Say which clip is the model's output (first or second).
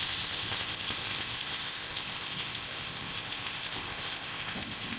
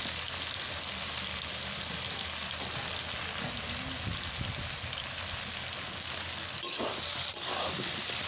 first